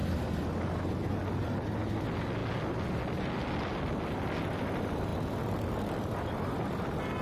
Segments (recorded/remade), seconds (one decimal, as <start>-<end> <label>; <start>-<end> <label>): 0.0-7.2 recorded